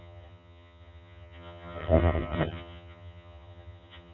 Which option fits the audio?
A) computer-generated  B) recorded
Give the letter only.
A